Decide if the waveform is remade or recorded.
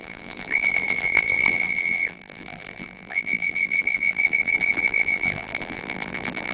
remade